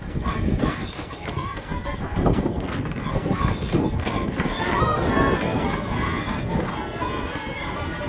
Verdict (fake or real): fake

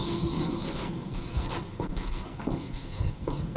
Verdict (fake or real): fake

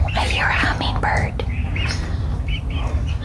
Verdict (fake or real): real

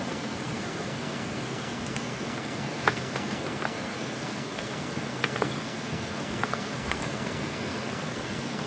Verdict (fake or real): fake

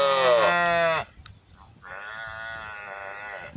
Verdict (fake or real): real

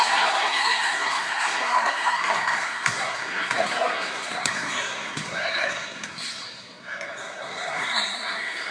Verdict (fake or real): fake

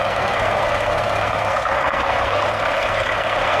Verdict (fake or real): fake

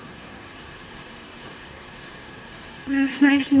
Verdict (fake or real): fake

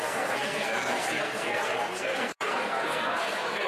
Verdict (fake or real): fake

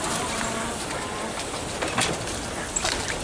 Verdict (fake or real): real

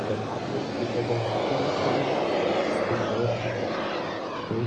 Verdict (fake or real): real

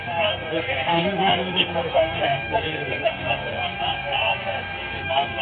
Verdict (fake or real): fake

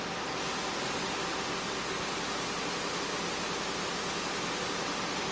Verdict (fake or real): real